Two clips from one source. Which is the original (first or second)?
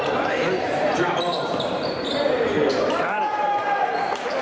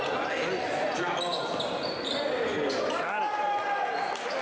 second